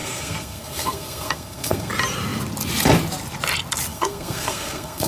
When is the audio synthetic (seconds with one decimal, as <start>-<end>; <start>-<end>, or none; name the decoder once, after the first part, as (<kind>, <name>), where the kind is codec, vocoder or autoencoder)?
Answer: 0.0-1.9 (codec, SNAC); 3.9-5.1